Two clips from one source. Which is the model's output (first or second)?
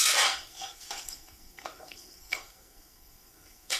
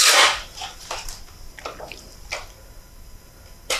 first